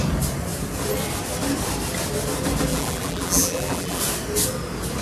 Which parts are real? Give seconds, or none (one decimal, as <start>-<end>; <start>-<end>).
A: 0.0-2.7; 4.0-5.0